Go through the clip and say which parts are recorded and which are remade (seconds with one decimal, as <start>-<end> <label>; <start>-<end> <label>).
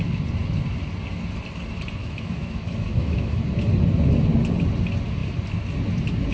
0.0-2.0 recorded; 2.0-3.4 remade; 3.4-6.3 recorded